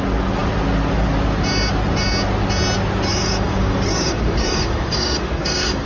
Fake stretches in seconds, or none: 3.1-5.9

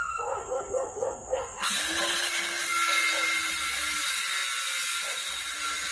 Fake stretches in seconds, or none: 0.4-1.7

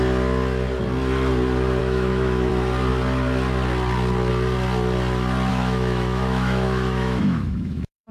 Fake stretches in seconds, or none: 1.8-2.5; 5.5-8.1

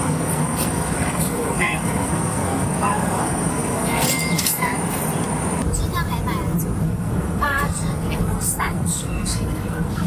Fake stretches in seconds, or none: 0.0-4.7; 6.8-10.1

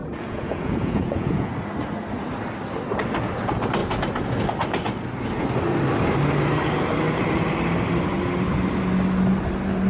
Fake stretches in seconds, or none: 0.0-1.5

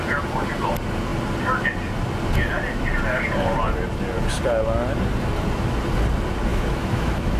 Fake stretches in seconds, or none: 6.5-7.4

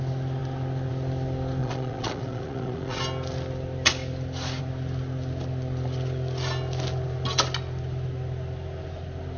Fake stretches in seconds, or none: 1.6-3.0

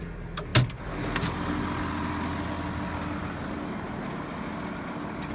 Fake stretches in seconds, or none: none